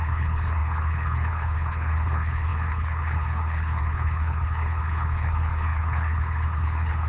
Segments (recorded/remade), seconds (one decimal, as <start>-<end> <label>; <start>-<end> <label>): 0.0-7.1 remade